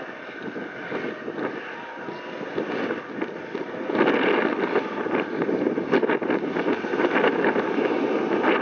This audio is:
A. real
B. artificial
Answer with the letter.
A